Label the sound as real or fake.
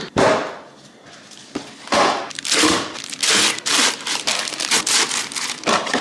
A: fake